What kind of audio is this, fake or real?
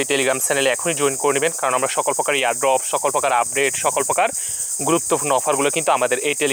real